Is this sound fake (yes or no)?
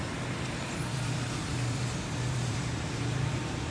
yes